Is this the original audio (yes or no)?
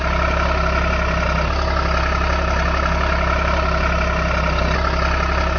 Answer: yes